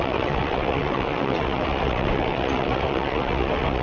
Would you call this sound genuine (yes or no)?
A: no